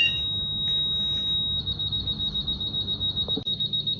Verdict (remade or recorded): recorded